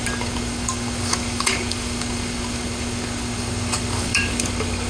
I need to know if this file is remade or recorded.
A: remade